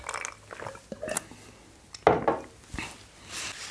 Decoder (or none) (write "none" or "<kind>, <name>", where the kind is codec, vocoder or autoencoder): none